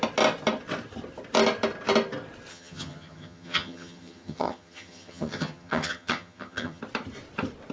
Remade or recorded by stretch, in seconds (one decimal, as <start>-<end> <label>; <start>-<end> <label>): 0.0-2.5 recorded; 2.5-6.8 remade; 6.8-7.7 recorded